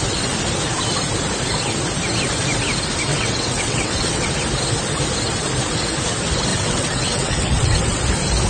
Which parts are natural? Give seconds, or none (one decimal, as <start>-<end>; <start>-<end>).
0.0-3.1; 4.3-6.5; 8.0-8.5